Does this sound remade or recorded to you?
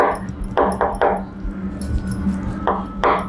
recorded